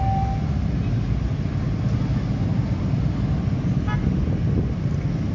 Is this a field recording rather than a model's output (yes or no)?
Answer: yes